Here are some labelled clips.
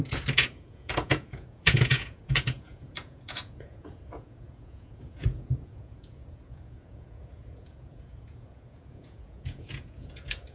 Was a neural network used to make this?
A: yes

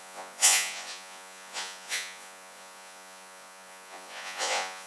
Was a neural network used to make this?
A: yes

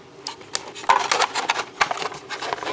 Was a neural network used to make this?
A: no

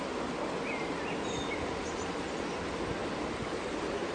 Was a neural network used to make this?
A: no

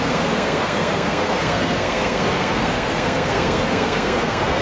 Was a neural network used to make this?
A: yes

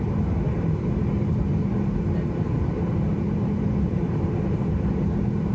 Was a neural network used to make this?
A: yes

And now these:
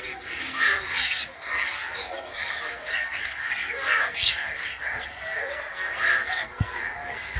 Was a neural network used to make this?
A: yes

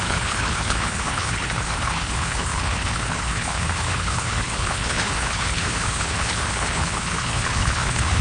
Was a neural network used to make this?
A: yes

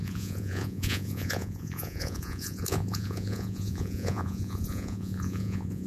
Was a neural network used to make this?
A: yes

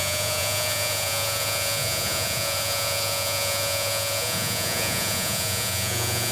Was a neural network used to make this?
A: yes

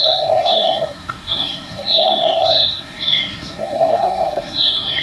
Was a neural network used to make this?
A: yes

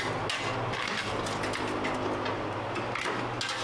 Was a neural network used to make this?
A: no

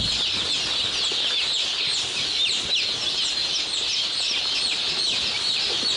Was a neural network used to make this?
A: no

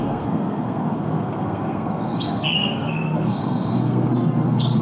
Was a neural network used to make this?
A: yes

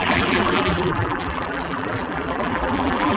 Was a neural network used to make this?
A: yes